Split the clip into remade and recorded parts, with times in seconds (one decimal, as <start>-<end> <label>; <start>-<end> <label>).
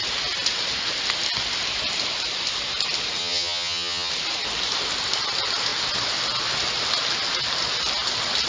0.0-3.2 recorded; 3.2-4.1 remade; 4.1-8.5 recorded